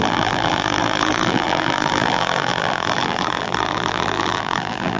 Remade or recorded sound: remade